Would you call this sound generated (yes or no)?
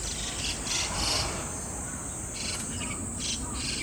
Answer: no